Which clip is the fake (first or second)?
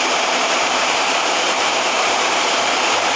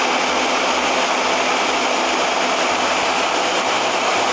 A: first